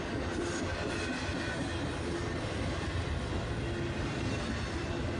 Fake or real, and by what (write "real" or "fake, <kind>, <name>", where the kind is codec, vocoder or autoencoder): real